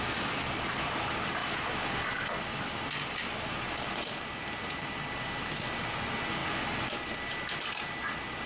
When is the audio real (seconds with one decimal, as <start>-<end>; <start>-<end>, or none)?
0.0-8.5